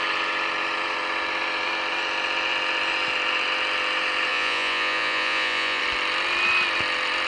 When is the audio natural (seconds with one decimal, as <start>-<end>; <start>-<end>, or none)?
0.0-4.3; 5.8-7.3